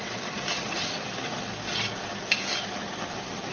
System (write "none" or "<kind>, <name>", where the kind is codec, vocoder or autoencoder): vocoder, BigVGAN v2